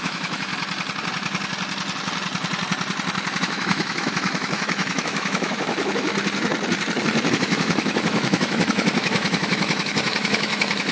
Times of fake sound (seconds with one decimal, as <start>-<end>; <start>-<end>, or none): 0.0-0.5; 3.4-6.1; 7.3-10.9